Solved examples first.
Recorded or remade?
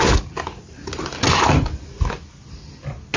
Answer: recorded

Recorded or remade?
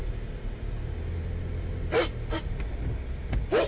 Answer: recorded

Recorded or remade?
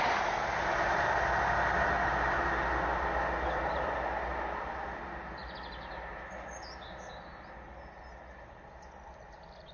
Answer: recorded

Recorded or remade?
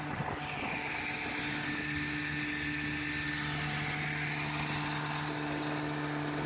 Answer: recorded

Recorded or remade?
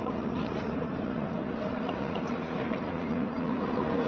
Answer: remade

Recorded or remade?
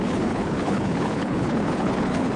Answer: remade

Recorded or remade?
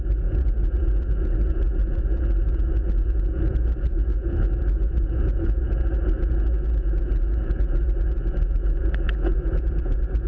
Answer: remade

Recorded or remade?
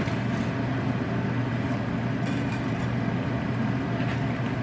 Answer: recorded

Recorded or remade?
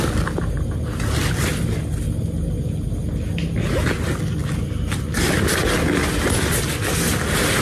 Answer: recorded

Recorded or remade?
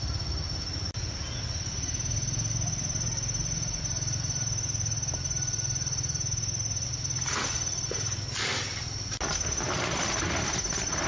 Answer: recorded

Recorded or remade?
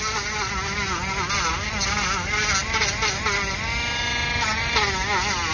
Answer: recorded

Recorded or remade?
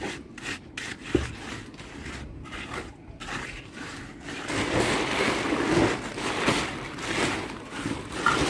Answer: recorded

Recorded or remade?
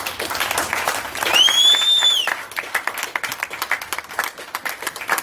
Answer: remade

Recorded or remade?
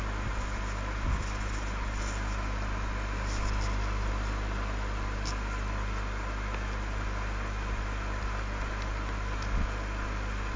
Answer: recorded